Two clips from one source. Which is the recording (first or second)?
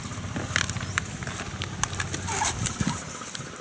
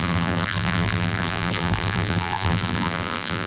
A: first